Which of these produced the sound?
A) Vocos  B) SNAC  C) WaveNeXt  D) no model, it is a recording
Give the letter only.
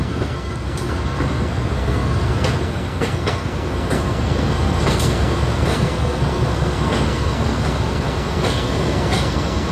B